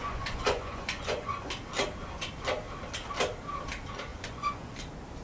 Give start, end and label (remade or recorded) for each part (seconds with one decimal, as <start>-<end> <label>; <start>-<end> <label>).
0.0-1.5 remade; 1.5-4.1 recorded; 4.1-4.7 remade; 4.7-5.2 recorded